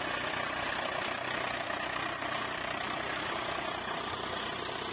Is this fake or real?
real